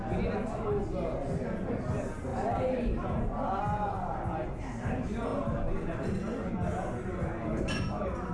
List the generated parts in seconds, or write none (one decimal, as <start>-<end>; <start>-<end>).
none